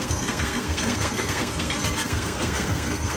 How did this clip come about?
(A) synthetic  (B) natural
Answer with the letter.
A